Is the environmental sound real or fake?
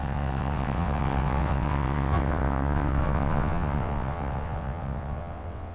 fake